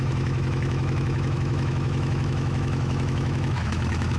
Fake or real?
fake